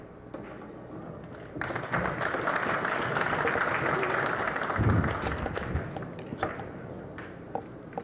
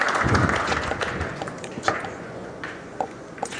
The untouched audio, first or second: first